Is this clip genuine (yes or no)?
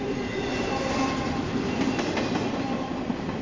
yes